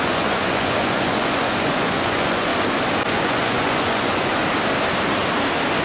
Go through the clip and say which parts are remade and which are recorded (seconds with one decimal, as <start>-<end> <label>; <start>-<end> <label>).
0.0-2.5 remade; 2.5-3.1 recorded; 3.1-4.4 remade; 4.4-5.8 recorded